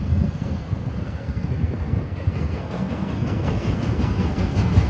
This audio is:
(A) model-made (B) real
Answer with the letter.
A